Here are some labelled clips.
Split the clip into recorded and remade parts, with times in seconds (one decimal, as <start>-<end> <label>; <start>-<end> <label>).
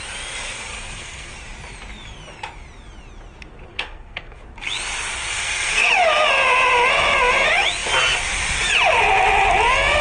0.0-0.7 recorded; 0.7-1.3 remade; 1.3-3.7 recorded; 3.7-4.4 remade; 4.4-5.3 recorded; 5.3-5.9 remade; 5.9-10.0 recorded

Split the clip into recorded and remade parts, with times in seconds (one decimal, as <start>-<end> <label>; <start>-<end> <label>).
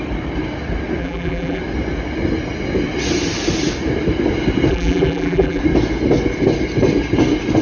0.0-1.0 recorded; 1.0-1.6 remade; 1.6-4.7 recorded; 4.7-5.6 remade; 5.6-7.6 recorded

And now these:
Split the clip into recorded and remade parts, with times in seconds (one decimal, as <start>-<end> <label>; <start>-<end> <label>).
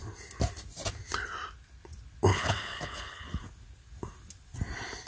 0.0-2.3 recorded; 2.3-3.4 remade; 3.4-5.1 recorded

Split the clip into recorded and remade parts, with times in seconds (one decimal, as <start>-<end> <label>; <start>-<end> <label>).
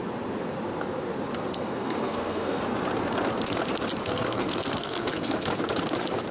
0.0-1.5 recorded; 1.5-2.6 remade; 2.6-4.0 recorded; 4.0-5.6 remade; 5.6-6.3 recorded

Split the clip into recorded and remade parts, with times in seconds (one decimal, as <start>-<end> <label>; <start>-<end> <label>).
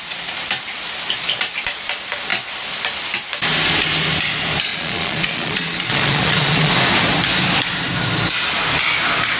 0.0-4.7 recorded; 4.7-6.7 remade; 6.7-9.4 recorded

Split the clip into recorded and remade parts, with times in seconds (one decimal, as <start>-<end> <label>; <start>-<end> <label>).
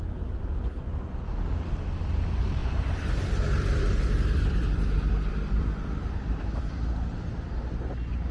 0.0-2.6 recorded; 2.6-6.9 remade; 6.9-8.3 recorded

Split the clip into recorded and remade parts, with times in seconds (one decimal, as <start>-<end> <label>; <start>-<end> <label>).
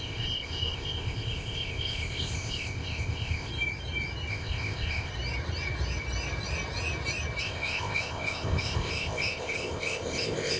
0.0-3.5 remade; 3.5-4.3 recorded; 4.3-5.1 remade; 5.1-7.4 recorded; 7.4-10.6 remade